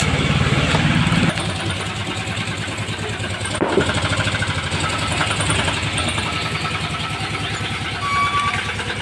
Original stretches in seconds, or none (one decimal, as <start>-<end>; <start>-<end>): 0.0-9.0